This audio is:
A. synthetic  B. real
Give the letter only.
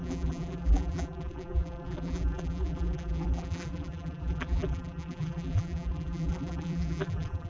A